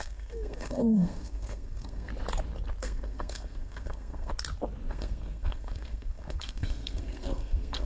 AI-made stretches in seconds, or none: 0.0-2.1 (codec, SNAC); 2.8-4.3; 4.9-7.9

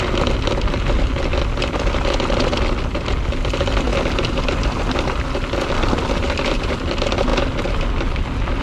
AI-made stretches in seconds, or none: none

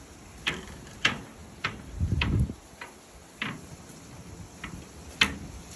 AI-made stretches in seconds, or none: none

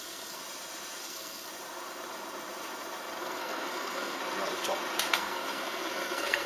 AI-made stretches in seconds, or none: 0.0-0.4 (codec, SNAC); 1.0-1.5; 3.2-4.2; 5.1-6.5

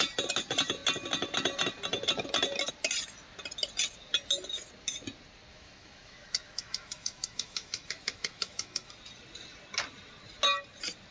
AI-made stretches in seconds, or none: 5.5-8.9 (autoencoder, DAC-VAE)

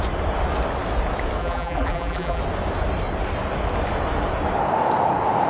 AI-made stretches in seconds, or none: 1.4-2.4 (vocoder, BigVGAN v2)